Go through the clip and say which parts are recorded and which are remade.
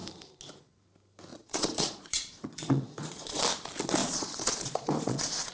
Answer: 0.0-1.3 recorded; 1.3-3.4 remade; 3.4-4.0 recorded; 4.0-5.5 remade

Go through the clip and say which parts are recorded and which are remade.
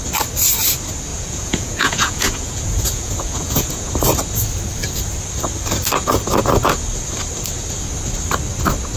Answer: 0.0-1.1 recorded; 1.1-3.9 remade; 3.9-9.0 recorded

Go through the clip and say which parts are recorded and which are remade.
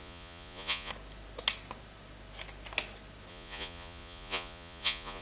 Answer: 0.0-0.9 remade; 0.9-3.3 recorded; 3.3-5.2 remade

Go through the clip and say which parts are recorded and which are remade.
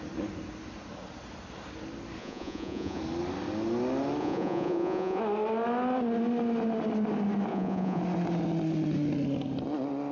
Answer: 0.0-2.2 recorded; 2.2-3.0 remade; 3.0-4.2 recorded; 4.2-5.2 remade; 5.2-7.5 recorded; 7.5-8.0 remade; 8.0-10.1 recorded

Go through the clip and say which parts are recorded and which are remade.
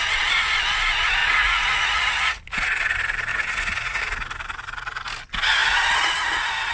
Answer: 0.0-1.2 recorded; 1.2-2.4 remade; 2.4-3.3 recorded; 3.3-4.0 remade; 4.0-6.7 recorded